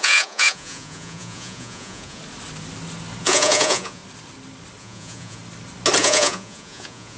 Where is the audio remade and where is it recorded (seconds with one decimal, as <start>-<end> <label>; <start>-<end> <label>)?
0.0-2.2 remade; 2.2-3.2 recorded; 3.2-4.0 remade; 4.0-4.8 recorded; 4.8-5.4 remade; 5.4-6.0 recorded; 6.0-7.2 remade